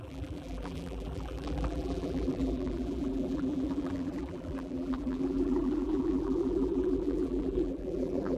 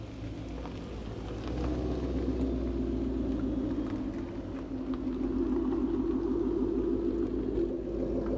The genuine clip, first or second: second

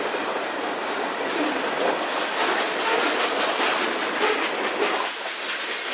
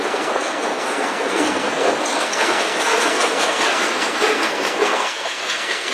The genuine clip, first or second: first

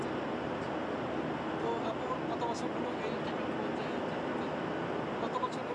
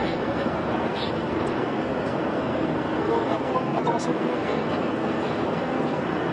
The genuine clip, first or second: first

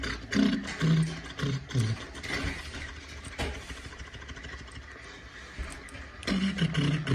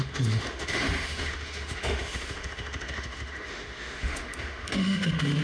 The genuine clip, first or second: first